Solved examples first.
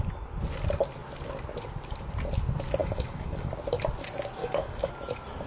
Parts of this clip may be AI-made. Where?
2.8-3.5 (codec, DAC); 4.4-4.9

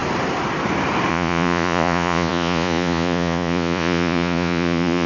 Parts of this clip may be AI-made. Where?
1.1-5.1 (vocoder, Vocos)

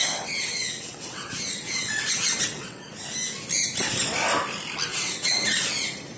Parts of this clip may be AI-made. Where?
0.0-2.9 (vocoder, WaveNeXt); 4.9-5.7

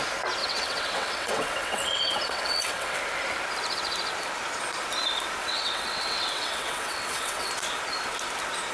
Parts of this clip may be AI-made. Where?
0.4-3.0 (vocoder, WaveNeXt); 5.4-7.5

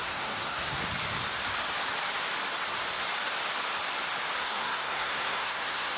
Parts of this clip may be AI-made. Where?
0.0-0.8 (codec, SNAC); 4.4-6.0